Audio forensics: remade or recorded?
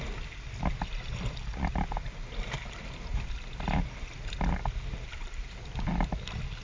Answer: recorded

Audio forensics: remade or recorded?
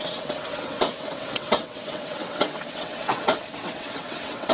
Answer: remade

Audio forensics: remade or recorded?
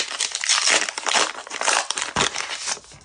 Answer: recorded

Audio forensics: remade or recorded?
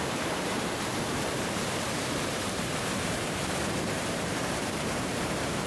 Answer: remade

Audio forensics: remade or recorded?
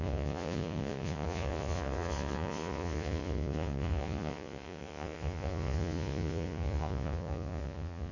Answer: remade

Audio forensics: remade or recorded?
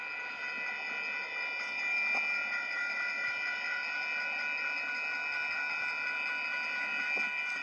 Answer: recorded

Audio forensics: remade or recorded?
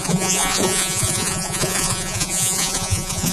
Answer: remade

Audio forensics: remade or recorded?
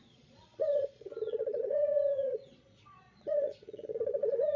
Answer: remade